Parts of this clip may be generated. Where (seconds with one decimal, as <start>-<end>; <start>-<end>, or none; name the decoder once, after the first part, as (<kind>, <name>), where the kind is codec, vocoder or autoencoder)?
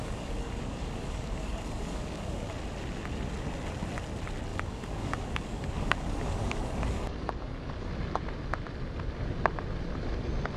0.0-2.5 (codec, DAC); 4.5-7.9